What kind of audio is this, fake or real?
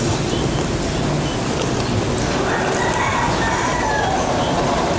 real